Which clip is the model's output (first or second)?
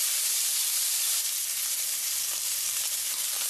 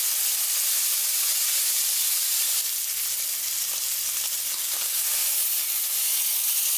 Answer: first